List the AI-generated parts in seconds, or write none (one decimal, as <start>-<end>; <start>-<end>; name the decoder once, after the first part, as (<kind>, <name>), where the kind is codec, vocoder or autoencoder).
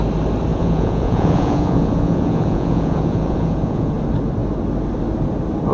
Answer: 0.5-3.9 (vocoder, Vocos)